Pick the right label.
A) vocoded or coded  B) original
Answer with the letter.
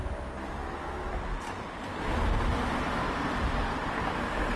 B